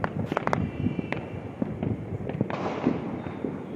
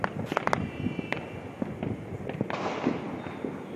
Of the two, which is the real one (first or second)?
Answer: second